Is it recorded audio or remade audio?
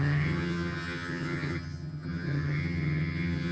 remade